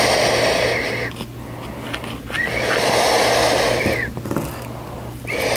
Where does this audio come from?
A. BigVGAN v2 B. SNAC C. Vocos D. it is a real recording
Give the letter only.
D